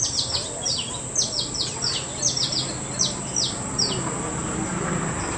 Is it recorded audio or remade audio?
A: recorded